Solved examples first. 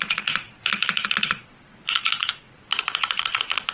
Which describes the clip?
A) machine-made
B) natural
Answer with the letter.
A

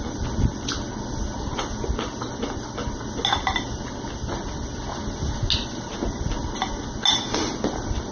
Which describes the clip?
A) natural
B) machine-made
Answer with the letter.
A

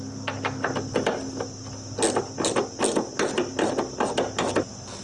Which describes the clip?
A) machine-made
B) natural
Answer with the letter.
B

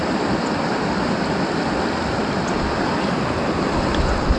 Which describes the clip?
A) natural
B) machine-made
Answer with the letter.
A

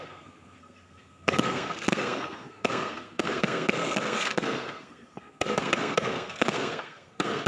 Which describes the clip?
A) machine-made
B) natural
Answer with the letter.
A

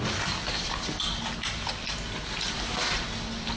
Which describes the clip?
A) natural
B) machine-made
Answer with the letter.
A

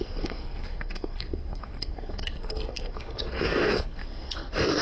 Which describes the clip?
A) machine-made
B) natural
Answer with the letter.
A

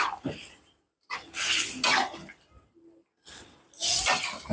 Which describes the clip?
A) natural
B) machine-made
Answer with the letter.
A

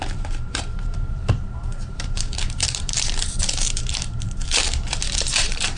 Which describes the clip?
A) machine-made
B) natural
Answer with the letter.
A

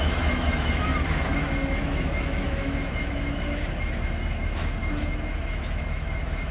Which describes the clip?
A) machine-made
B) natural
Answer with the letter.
A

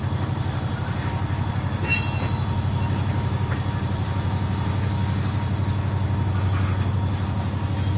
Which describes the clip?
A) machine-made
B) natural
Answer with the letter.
B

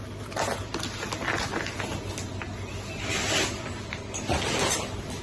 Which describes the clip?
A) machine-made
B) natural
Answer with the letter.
B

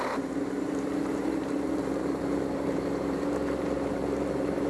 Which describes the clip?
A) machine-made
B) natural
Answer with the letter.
A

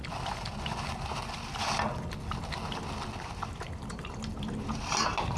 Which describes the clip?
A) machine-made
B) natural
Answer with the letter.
B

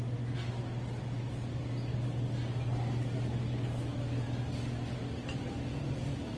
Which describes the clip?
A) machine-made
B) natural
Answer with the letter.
B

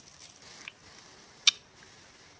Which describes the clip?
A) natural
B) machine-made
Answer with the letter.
A